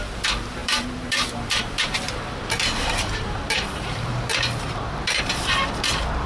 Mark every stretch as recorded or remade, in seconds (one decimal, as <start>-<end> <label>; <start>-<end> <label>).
0.0-6.3 remade

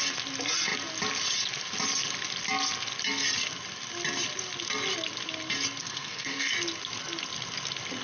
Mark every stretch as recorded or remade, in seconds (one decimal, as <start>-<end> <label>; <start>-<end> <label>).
0.0-5.8 recorded; 5.8-6.5 remade; 6.5-8.0 recorded

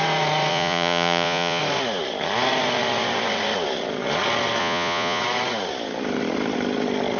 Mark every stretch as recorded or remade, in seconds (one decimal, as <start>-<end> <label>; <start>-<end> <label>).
0.0-0.5 recorded; 0.5-1.6 remade; 1.6-4.6 recorded; 4.6-5.2 remade; 5.2-7.2 recorded

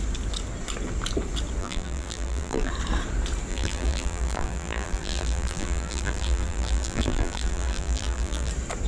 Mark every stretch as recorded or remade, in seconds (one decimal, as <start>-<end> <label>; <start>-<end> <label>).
0.0-1.6 recorded; 1.6-2.7 remade; 2.7-3.5 recorded; 3.5-8.5 remade; 8.5-8.9 recorded